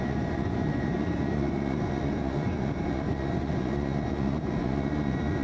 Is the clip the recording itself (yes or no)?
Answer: no